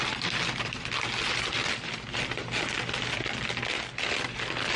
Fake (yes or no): no